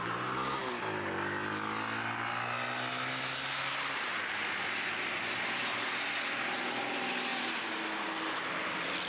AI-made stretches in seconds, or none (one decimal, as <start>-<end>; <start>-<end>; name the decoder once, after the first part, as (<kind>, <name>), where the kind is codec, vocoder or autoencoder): none